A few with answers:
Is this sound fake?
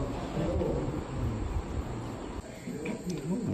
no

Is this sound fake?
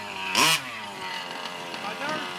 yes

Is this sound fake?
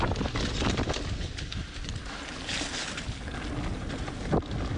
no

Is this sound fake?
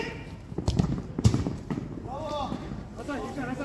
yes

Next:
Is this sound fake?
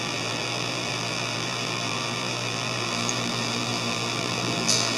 yes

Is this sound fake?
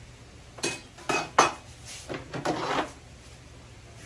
no